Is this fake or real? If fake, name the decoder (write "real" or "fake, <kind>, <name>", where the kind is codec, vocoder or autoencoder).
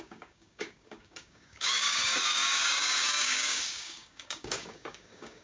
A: fake, codec, DAC